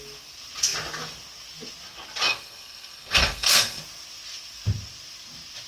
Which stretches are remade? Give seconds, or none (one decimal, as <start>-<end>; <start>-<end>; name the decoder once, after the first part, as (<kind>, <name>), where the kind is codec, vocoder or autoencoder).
2.3-3.8 (codec, SNAC)